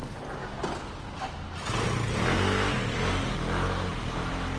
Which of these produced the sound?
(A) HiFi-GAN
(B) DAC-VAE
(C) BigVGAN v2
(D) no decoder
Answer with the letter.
D